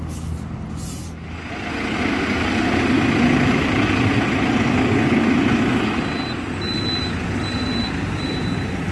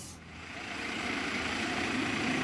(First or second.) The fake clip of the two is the second